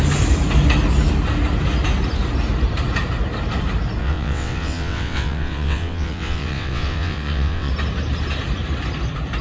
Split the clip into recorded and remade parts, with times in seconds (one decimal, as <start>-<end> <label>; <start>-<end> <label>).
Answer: 0.0-4.0 recorded; 4.0-7.7 remade; 7.7-9.4 recorded